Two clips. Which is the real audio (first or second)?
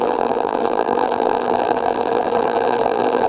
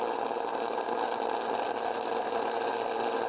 second